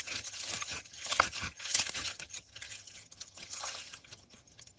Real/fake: fake